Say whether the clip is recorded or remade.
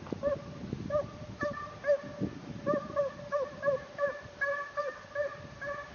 recorded